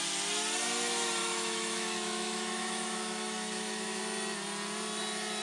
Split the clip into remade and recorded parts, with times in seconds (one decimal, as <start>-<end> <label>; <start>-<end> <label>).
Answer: 0.0-1.2 recorded; 1.2-4.0 remade; 4.0-5.4 recorded